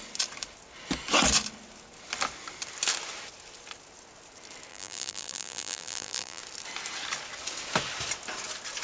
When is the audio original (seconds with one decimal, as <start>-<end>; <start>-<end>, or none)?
0.0-4.7; 6.4-8.8